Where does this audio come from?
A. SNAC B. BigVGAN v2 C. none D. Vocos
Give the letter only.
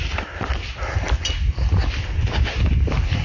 C